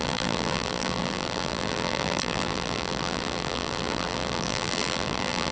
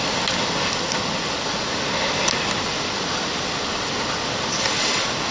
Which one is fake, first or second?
first